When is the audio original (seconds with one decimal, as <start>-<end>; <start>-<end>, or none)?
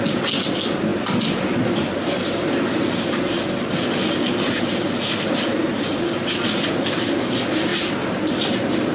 0.0-8.9